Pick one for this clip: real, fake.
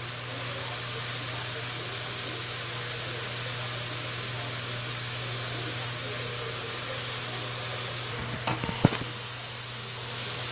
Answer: real